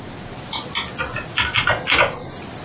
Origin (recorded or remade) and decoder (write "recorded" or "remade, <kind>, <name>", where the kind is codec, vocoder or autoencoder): recorded